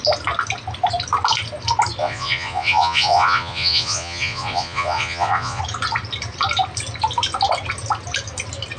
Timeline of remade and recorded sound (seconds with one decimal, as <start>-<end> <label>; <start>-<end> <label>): 0.0-2.0 recorded; 2.0-5.6 remade; 5.6-8.8 recorded